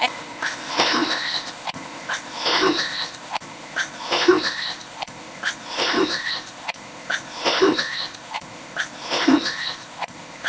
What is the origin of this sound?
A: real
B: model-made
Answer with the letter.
B